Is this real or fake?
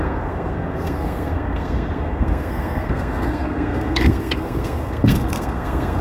fake